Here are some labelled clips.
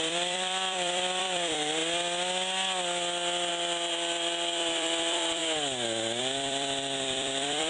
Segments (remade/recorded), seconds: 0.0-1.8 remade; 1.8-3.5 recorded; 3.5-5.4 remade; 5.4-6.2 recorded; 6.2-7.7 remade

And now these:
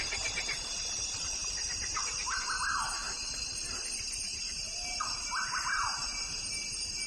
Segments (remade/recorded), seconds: 0.0-3.0 recorded; 3.0-4.5 remade; 4.5-7.1 recorded

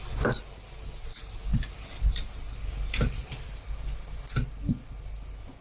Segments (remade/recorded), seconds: 0.0-5.6 recorded

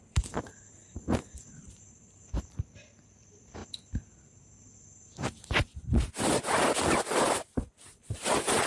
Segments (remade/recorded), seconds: 0.0-0.8 remade; 0.8-1.6 recorded; 1.6-3.6 remade; 3.6-8.7 recorded